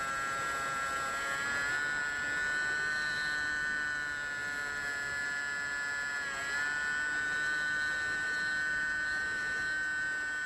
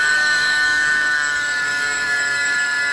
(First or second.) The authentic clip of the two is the first